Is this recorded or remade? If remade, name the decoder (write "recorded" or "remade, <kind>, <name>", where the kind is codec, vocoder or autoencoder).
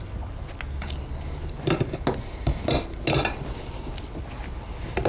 recorded